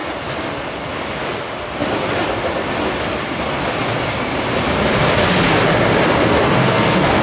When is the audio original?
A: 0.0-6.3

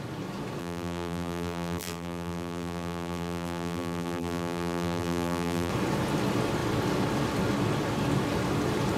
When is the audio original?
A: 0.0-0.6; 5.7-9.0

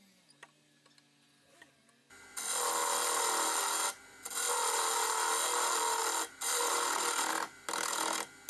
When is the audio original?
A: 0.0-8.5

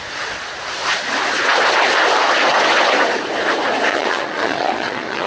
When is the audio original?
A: 0.0-3.9

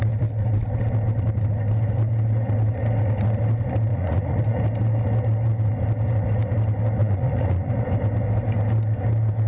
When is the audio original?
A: 0.0-3.9; 4.6-7.0; 7.7-9.5

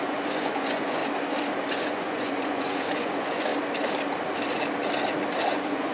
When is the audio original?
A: 1.0-1.7; 3.5-5.4

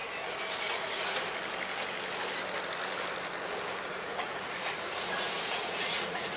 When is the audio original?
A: 0.0-0.6; 1.2-3.9